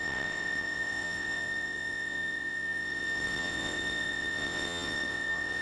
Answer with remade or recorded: remade